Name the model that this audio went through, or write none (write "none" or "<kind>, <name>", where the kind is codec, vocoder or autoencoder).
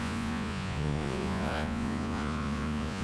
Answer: vocoder, Vocos